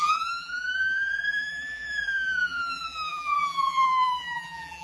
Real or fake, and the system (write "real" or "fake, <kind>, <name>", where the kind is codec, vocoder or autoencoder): fake, vocoder, BigVGAN v2